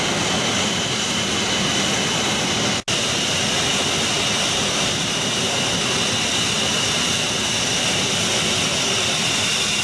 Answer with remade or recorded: recorded